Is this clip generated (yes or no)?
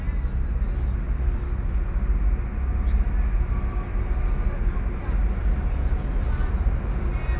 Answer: no